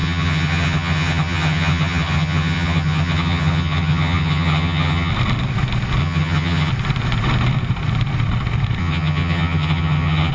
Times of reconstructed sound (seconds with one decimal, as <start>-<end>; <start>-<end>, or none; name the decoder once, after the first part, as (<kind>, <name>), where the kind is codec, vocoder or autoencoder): 0.0-5.1 (vocoder, HiFi-GAN); 6.0-6.7; 8.8-10.3